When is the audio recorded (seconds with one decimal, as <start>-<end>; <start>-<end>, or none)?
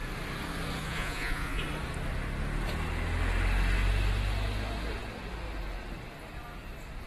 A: 0.0-0.8; 1.6-7.1